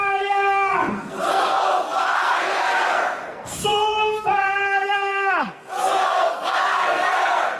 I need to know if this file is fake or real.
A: fake